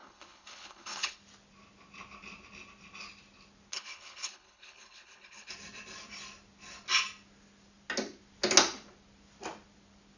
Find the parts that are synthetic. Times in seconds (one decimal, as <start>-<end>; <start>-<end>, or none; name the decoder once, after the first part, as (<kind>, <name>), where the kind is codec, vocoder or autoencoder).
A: 0.0-1.2 (codec, HILCodec); 3.7-5.5